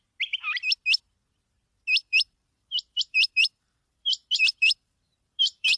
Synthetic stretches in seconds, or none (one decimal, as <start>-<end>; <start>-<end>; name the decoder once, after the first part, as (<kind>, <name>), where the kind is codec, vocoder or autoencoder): 2.0-5.8 (vocoder, BigVGAN v2)